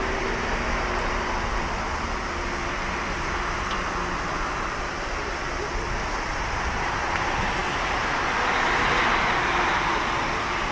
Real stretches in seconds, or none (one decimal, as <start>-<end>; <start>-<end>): 0.0-10.7